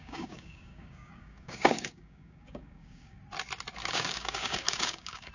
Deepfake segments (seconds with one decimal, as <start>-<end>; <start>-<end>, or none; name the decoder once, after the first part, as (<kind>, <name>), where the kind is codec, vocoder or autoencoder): 0.0-3.2 (codec, DAC); 3.8-5.3